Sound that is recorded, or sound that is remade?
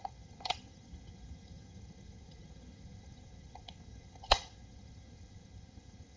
remade